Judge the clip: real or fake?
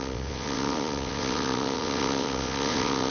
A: fake